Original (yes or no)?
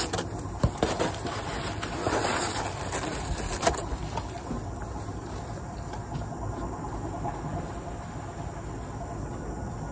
yes